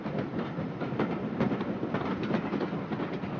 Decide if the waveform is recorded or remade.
recorded